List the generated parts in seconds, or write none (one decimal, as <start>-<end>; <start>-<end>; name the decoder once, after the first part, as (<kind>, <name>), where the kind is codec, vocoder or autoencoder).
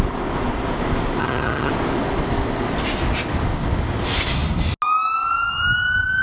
1.2-1.7 (vocoder, HiFi-GAN)